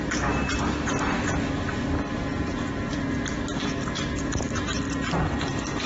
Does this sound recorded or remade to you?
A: recorded